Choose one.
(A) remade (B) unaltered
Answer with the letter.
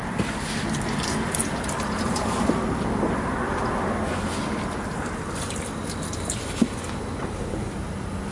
B